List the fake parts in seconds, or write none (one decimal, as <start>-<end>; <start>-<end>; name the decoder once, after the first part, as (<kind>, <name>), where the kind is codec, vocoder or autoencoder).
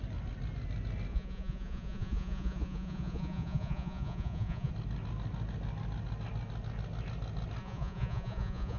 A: 1.1-4.7 (vocoder, Vocos); 7.6-8.8